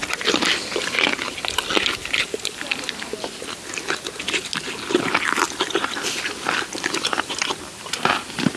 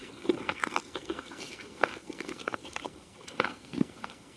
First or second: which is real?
first